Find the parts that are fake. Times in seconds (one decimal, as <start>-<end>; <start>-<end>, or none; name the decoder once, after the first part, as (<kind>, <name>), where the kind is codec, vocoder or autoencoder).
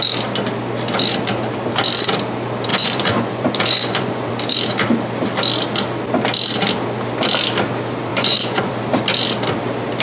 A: 2.7-4.3 (vocoder, Vocos); 8.1-8.7